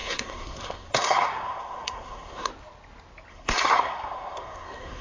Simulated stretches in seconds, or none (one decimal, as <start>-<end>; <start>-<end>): 0.0-2.5; 3.3-5.0